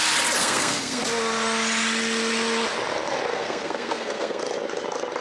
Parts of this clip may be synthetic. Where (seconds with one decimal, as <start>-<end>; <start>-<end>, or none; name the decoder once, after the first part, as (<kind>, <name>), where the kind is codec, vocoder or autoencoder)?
0.4-1.0 (codec, SNAC); 3.3-4.4